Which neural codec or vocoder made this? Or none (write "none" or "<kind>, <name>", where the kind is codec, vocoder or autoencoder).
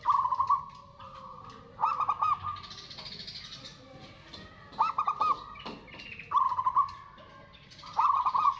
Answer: none